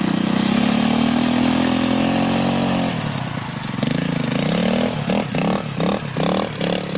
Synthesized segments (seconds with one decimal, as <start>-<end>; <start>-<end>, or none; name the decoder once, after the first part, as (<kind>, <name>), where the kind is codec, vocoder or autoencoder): none